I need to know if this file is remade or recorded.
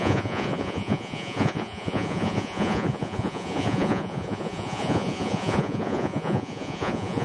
remade